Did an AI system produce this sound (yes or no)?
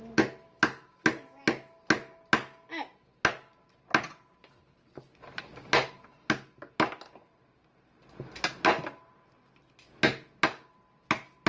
no